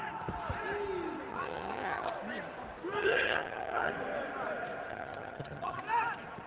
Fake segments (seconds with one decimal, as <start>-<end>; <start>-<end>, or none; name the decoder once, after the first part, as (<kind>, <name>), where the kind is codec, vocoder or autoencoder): 1.3-2.1 (vocoder, HiFi-GAN); 3.0-3.9; 4.9-5.8